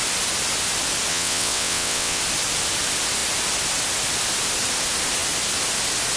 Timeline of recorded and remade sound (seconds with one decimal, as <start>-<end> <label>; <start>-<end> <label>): 0.0-1.1 recorded; 1.1-2.2 remade; 2.2-6.2 recorded